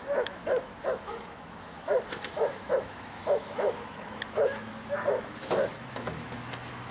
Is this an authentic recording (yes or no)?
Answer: no